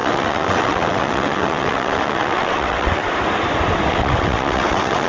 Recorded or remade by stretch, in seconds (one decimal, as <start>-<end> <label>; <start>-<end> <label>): 0.0-3.1 remade; 3.1-3.9 recorded; 3.9-5.1 remade